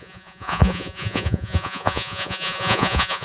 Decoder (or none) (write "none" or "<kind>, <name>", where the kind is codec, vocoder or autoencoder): vocoder, Vocos